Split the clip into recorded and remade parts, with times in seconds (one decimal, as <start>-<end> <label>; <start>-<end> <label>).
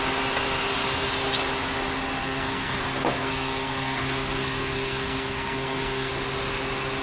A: 0.0-2.2 recorded; 2.2-2.8 remade; 2.8-3.2 recorded; 3.2-6.1 remade; 6.1-7.0 recorded